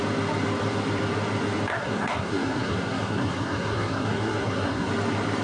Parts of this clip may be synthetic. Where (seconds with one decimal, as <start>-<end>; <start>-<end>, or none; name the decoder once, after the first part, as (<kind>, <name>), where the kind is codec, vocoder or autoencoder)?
1.7-4.9 (codec, SNAC)